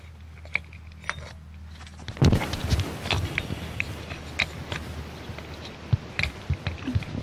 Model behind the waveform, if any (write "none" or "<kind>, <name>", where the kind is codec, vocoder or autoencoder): none